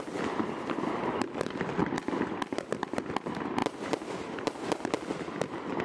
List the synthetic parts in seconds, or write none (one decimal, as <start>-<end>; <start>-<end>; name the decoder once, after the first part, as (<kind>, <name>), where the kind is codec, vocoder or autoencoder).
1.8-3.0 (vocoder, BigVGAN v2)